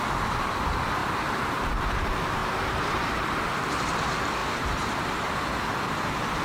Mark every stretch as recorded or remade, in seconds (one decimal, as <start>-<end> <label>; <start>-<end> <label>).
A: 0.0-1.0 recorded; 1.0-1.6 remade; 1.6-2.4 recorded; 2.4-3.8 remade; 3.8-6.4 recorded